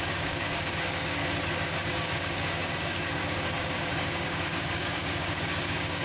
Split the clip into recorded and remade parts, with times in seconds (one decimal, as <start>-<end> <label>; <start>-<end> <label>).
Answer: 0.0-1.2 remade; 1.2-1.7 recorded; 1.7-6.0 remade